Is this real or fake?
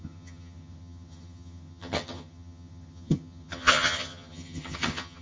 fake